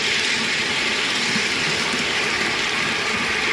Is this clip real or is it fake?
real